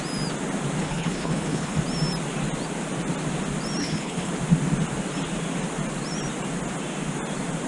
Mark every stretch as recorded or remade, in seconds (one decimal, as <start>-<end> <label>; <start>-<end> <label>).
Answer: 0.0-0.8 recorded; 0.8-1.8 remade; 1.8-3.8 recorded; 3.8-4.3 remade; 4.3-7.7 recorded